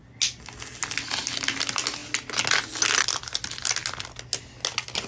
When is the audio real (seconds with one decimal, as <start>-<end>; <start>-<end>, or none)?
0.0-5.1